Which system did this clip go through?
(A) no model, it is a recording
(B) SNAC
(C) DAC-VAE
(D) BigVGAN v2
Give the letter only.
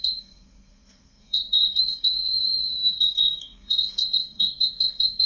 B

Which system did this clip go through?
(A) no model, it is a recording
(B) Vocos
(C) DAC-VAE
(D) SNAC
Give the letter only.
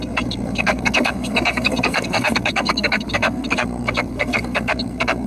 D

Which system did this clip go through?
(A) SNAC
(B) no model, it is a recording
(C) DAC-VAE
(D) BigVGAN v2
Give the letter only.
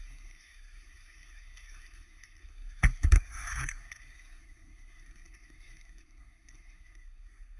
A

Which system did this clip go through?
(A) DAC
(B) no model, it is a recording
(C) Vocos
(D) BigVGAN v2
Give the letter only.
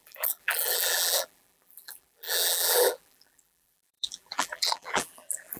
D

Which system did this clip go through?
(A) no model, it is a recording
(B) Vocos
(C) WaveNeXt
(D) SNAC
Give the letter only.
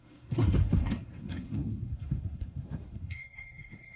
D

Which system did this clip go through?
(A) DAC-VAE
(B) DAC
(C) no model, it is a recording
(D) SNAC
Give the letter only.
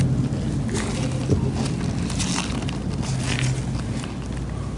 C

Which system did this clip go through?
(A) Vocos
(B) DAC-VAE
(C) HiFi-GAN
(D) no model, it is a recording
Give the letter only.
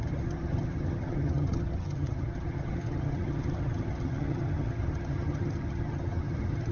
C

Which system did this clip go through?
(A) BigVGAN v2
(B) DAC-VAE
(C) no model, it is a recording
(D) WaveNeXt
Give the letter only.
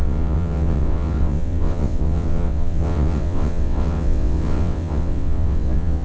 D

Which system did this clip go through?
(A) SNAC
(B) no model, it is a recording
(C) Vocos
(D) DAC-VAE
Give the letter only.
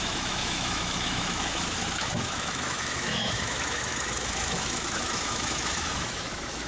D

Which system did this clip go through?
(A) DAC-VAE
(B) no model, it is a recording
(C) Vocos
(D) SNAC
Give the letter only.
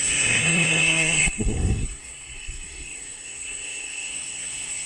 D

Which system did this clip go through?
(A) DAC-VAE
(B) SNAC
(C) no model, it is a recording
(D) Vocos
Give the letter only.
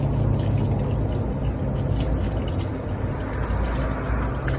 C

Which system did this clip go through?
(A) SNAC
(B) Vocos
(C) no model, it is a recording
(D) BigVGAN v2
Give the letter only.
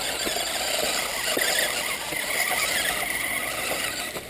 C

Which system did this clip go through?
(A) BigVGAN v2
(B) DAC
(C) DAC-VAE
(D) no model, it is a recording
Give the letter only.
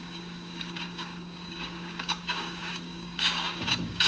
B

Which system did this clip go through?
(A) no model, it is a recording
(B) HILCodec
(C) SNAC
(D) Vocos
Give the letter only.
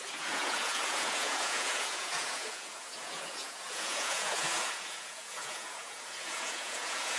D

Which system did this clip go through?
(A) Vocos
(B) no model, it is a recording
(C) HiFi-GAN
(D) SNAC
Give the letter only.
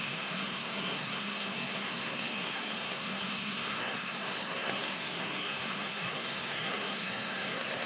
D